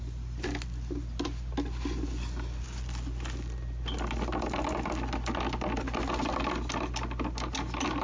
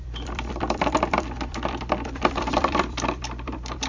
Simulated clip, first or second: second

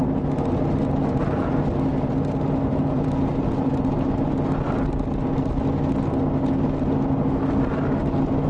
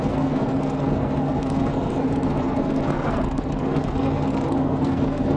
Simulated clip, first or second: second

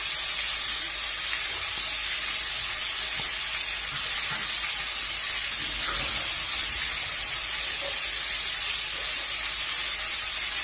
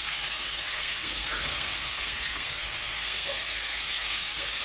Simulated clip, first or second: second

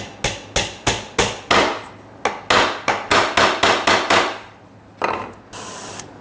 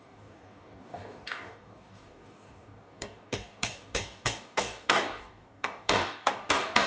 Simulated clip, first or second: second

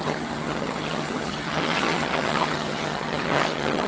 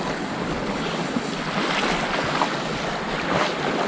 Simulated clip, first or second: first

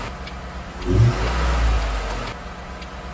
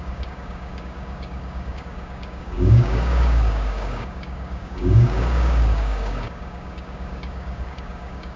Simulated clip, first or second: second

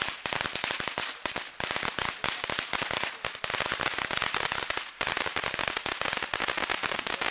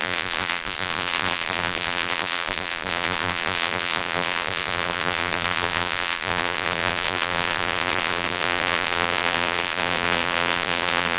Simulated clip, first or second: second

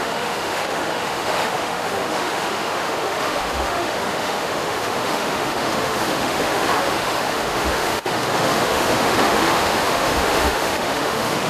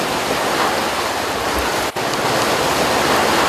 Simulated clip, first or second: first